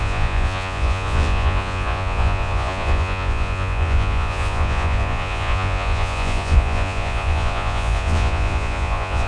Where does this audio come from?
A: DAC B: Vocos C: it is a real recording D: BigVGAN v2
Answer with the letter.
B